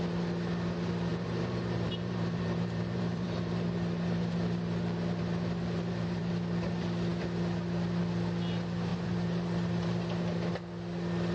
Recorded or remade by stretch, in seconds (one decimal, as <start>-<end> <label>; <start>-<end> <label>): 0.0-1.1 recorded; 1.1-6.3 remade; 6.3-8.9 recorded; 8.9-10.5 remade; 10.5-11.3 recorded